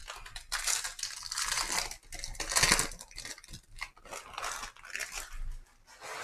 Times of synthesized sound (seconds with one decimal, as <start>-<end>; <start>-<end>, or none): none